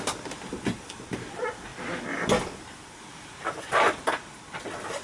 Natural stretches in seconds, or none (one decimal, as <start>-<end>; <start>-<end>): 0.0-5.0